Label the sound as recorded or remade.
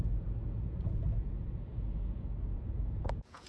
remade